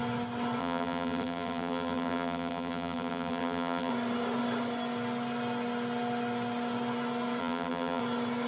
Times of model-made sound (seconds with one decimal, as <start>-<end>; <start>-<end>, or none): 0.6-3.9; 7.4-8.0